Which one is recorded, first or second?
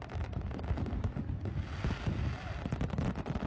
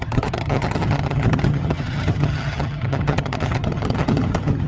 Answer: first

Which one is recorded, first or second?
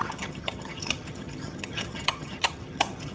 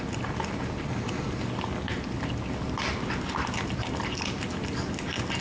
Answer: second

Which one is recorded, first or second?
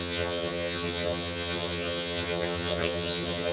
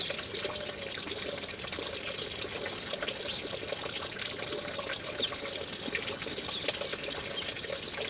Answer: second